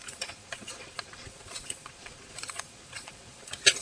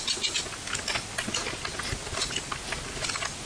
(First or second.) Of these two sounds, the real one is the second